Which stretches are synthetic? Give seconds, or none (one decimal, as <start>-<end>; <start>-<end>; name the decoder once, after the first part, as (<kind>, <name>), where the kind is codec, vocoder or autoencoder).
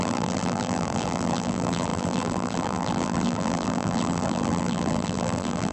0.0-5.7 (vocoder, BigVGAN v2)